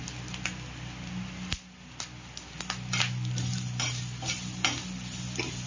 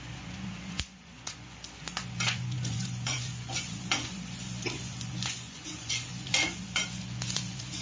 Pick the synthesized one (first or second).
second